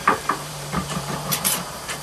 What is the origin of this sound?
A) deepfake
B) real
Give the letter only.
A